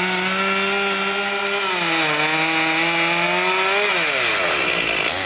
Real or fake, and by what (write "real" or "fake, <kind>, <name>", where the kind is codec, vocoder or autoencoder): real